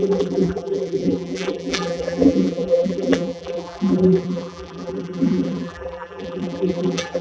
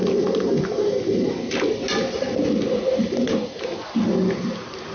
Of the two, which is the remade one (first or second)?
first